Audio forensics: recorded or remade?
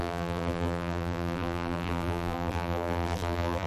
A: remade